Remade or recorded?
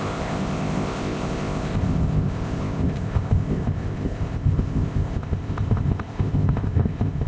remade